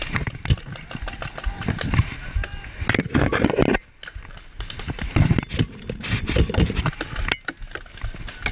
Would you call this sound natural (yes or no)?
yes